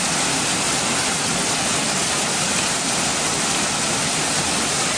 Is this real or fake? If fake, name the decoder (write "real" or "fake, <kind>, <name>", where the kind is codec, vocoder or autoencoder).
real